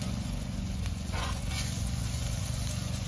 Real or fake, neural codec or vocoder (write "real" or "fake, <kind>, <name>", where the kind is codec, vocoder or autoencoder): fake, vocoder, Vocos